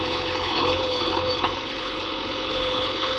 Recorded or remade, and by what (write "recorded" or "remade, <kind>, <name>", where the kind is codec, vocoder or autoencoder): remade, codec, HILCodec